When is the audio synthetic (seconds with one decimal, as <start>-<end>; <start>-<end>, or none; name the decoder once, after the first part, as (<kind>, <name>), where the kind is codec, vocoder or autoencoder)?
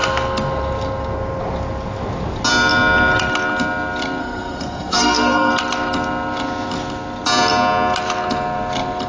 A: 4.2-5.5 (codec, SNAC)